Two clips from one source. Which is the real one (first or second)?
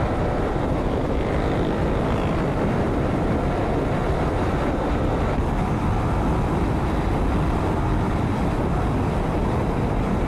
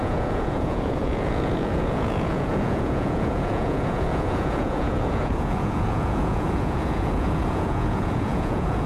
first